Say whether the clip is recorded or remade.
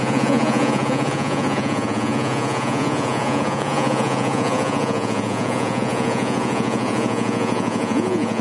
remade